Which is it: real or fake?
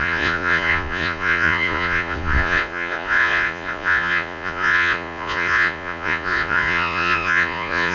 fake